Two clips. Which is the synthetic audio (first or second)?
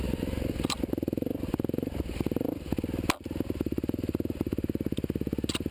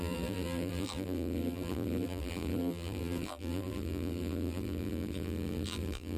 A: second